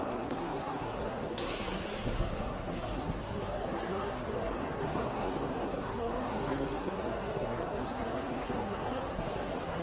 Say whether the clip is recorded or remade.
remade